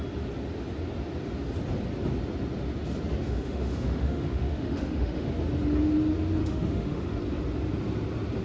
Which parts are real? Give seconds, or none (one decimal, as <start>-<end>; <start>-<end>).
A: 0.0-3.2; 5.3-6.4; 7.2-8.4